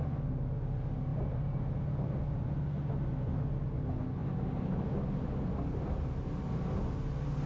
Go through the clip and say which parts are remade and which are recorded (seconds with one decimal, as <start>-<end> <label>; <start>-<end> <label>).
0.0-7.5 recorded